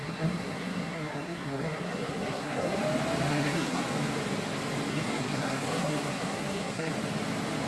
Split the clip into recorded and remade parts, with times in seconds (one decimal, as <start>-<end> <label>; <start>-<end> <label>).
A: 0.0-2.8 remade; 2.8-3.3 recorded; 3.3-3.8 remade; 3.8-4.9 recorded; 4.9-6.9 remade; 6.9-7.7 recorded